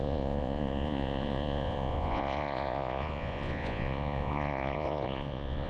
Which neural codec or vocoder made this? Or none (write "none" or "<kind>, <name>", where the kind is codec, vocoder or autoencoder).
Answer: vocoder, Vocos